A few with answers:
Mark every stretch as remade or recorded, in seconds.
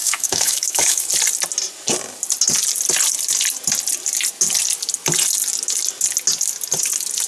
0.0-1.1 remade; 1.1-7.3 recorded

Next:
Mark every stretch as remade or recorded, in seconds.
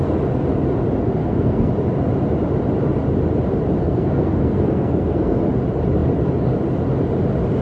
0.0-1.2 recorded; 1.2-1.7 remade; 1.7-3.8 recorded; 3.8-5.4 remade; 5.4-7.6 recorded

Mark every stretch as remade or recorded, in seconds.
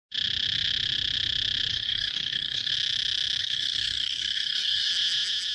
0.0-1.7 recorded; 1.7-2.7 remade; 2.7-3.4 recorded; 3.4-4.9 remade; 4.9-5.5 recorded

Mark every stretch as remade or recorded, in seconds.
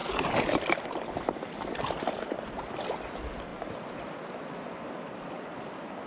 0.0-6.1 recorded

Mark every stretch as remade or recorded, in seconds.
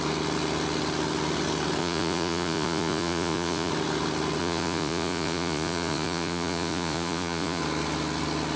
0.0-1.8 recorded; 1.8-3.7 remade; 3.7-4.4 recorded; 4.4-7.6 remade; 7.6-8.6 recorded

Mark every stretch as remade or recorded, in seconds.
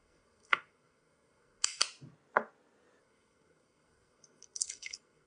0.0-1.8 remade; 1.8-3.0 recorded; 3.0-5.3 remade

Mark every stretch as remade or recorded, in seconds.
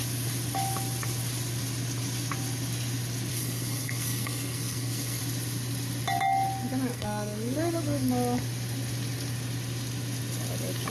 0.0-3.3 recorded; 3.3-5.2 remade; 5.2-6.9 recorded; 6.9-8.1 remade; 8.1-10.9 recorded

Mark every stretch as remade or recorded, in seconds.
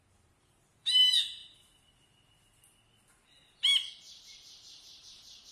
0.0-1.4 remade; 1.4-3.9 recorded; 3.9-5.5 remade